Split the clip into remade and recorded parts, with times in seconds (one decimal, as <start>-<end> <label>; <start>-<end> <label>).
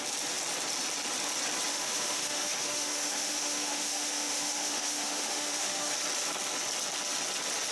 0.0-1.7 recorded; 1.7-5.9 remade; 5.9-7.7 recorded